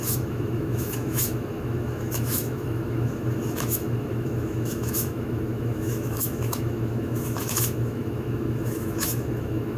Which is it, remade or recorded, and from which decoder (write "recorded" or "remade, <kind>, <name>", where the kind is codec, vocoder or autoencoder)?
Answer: remade, autoencoder, DAC-VAE